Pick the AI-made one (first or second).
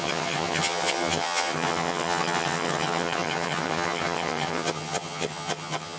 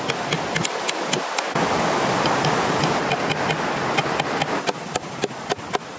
first